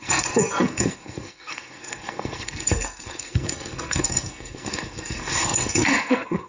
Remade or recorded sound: remade